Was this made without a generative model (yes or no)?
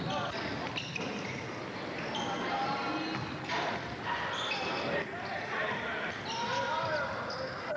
yes